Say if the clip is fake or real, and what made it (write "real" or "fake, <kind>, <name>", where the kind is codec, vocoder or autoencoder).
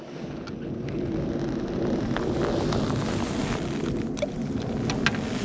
real